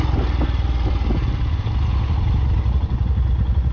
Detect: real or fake real